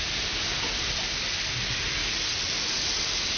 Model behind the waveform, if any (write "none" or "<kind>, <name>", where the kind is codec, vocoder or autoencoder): none